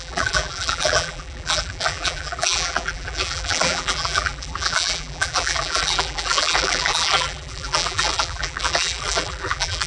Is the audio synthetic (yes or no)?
yes